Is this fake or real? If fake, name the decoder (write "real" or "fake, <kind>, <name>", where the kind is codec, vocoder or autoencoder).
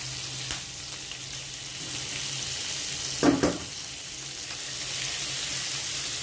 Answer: real